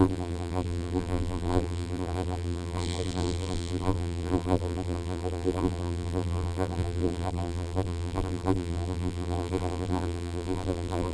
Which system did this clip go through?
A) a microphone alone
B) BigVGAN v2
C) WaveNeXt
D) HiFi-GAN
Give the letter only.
B